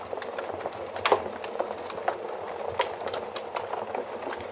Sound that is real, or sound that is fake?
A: real